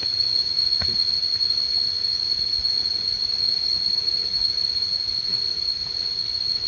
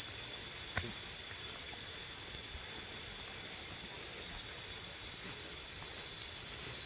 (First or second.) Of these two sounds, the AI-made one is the first